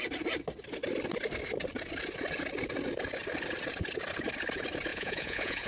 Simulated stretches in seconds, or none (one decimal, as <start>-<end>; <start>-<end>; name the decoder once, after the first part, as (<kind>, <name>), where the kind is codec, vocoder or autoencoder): 4.9-5.7 (vocoder, Vocos)